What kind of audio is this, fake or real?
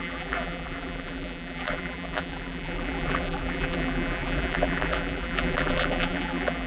fake